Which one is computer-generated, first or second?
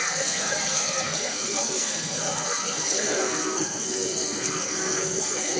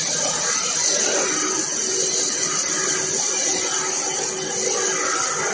first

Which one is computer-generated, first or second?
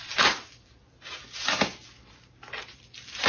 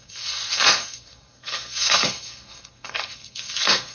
second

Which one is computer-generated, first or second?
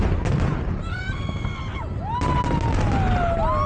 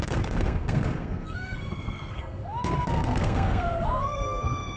second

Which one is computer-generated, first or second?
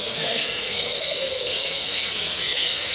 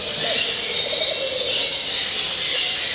first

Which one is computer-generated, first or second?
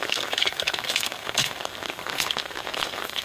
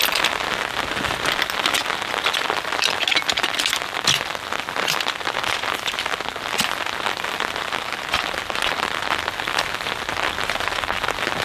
first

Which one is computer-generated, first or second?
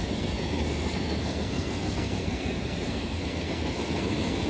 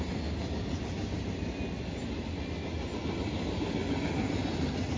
first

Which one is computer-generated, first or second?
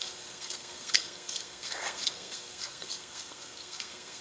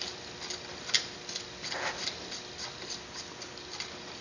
first